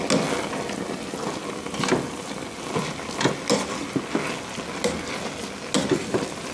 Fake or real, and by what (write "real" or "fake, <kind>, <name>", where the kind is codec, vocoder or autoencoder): real